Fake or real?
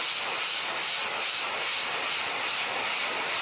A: real